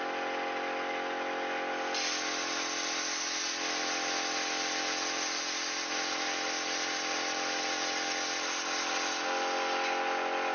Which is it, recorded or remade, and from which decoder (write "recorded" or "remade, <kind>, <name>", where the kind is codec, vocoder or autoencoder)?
recorded